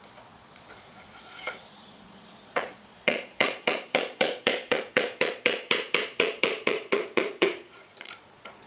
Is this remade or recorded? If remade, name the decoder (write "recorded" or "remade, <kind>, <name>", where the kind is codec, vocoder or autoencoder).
remade, vocoder, Vocos